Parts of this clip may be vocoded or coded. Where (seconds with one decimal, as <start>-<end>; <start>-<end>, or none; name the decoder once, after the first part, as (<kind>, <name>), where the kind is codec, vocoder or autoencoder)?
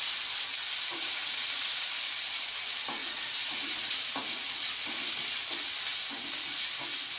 0.9-1.9 (vocoder, Vocos); 3.0-5.1